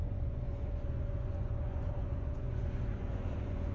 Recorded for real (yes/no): no